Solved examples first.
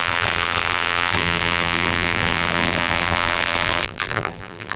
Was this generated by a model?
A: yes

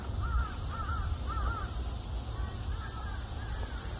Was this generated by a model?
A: no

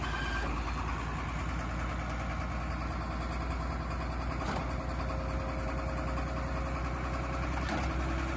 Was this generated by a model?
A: no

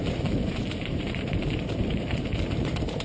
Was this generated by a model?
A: yes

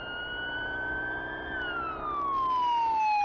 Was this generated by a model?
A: no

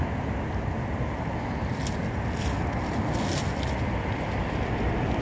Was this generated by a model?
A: no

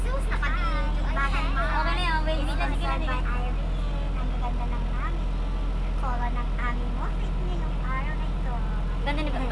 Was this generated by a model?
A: no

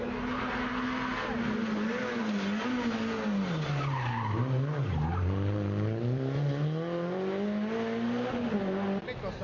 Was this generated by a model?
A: no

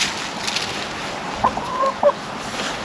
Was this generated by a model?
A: no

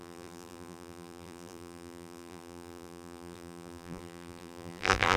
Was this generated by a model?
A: yes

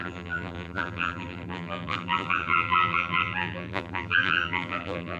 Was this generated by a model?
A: yes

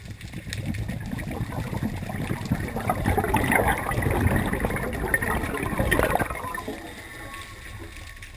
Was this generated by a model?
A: no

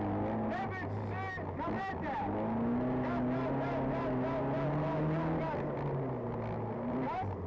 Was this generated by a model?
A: no